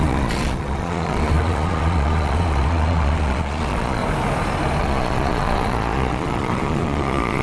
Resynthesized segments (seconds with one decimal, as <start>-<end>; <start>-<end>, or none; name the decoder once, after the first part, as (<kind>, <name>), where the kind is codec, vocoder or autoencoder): 0.0-4.0 (vocoder, Vocos); 4.8-7.4

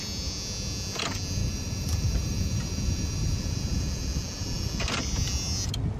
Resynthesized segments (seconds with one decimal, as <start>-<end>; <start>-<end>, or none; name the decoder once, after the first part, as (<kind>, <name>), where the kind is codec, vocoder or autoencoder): 1.4-4.8 (vocoder, BigVGAN v2)

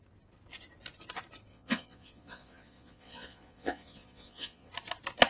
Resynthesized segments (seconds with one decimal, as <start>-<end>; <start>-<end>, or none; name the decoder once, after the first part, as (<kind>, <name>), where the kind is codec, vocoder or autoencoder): 1.5-4.7 (vocoder, Vocos)

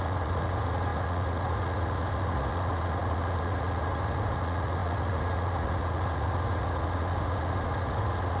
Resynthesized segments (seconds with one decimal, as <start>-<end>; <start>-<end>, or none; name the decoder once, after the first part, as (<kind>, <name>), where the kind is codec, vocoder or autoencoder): 0.0-8.4 (vocoder, Vocos)

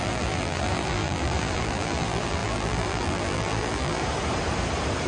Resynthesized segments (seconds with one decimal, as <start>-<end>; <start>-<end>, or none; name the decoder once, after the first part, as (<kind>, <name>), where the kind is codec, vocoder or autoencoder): 0.0-4.0 (vocoder, BigVGAN v2)

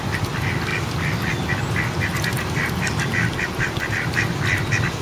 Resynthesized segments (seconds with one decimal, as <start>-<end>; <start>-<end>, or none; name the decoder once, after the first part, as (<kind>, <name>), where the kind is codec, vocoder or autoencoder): none